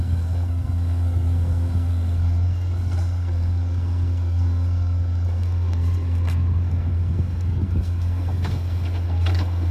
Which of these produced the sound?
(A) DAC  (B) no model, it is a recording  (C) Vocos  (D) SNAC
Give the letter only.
D